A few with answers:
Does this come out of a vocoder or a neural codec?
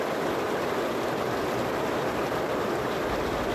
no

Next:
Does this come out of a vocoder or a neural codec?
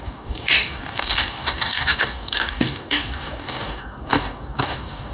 yes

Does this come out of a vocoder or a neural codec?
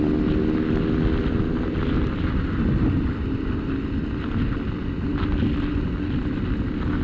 no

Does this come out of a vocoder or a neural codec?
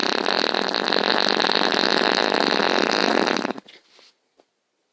no